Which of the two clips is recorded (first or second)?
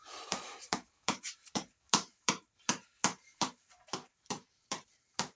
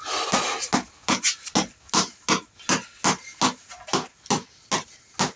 second